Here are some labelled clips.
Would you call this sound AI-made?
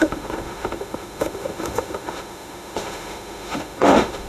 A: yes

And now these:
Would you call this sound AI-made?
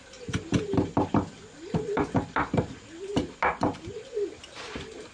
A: no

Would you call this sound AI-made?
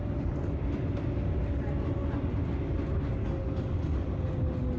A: no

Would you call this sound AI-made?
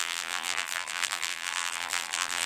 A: yes